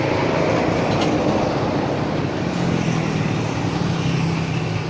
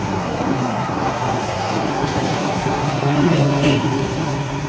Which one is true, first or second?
first